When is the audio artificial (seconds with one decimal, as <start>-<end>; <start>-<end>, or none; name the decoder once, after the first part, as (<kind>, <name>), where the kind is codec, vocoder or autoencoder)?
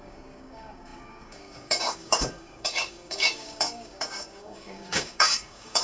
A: 0.0-5.8 (codec, DAC)